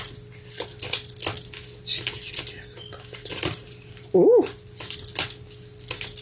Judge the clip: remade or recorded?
recorded